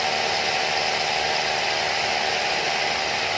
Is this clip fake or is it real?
real